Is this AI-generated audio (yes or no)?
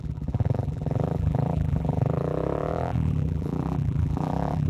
yes